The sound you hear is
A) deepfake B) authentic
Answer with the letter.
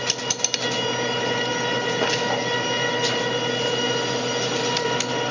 B